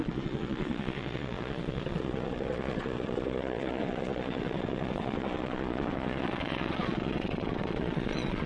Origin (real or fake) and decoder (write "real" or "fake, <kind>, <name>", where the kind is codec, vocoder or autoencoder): fake, vocoder, Vocos